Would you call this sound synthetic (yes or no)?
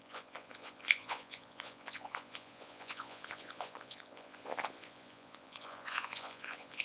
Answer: yes